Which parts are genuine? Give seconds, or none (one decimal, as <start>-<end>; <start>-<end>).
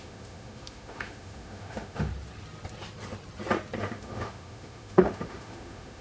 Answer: 2.1-3.8